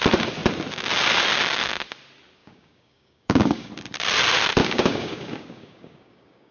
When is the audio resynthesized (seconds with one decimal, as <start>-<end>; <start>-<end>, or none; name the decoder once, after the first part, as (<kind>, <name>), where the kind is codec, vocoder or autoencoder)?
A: 2.4-3.7 (codec, DAC); 4.6-6.5

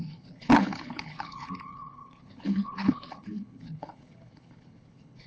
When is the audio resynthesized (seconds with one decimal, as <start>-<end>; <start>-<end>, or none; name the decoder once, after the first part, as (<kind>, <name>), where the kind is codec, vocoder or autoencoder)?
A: 0.0-5.3 (codec, HILCodec)

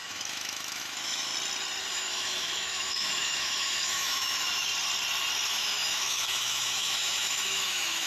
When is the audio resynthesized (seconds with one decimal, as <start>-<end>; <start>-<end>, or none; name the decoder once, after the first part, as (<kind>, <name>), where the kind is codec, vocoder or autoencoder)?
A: 0.0-1.3 (autoencoder, DAC-VAE); 1.9-4.7; 5.5-8.1

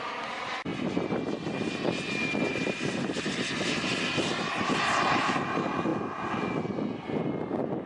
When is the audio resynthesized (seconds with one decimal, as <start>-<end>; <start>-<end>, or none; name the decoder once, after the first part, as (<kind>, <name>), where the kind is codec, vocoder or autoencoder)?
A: 2.5-3.3 (vocoder, BigVGAN v2)